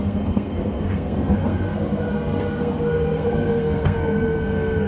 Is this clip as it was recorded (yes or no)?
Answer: no